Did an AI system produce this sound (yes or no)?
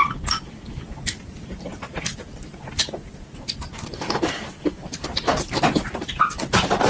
no